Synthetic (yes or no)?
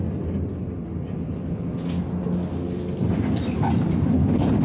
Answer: no